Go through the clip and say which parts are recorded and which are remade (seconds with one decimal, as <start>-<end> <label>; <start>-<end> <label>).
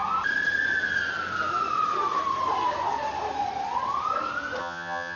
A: 0.0-4.6 recorded; 4.6-5.2 remade